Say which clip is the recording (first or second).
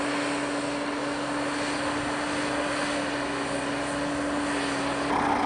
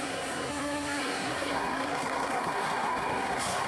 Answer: first